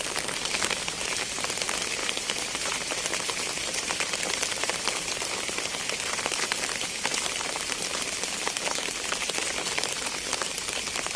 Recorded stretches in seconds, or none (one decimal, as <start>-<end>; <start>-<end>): 0.0-2.0; 6.5-11.2